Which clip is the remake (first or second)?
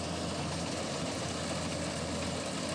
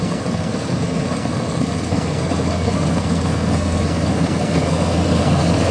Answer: second